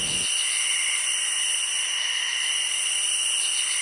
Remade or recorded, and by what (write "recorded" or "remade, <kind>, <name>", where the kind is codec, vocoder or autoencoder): recorded